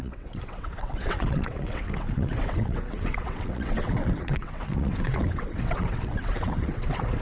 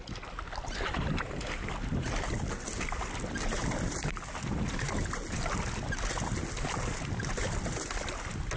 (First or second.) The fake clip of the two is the first